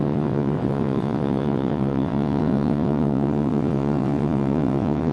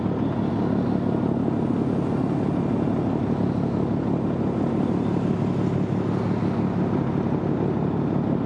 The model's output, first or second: first